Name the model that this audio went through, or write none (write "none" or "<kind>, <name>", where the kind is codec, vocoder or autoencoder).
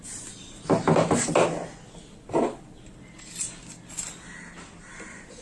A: none